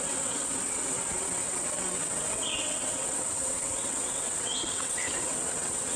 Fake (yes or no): yes